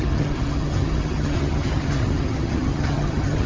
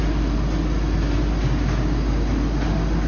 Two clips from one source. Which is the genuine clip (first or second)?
second